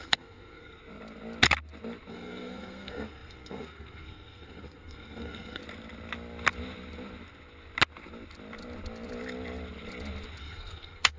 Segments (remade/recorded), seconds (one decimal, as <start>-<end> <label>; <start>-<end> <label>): 0.0-0.8 remade; 0.8-2.1 recorded; 2.1-5.6 remade; 5.6-10.4 recorded; 10.4-11.2 remade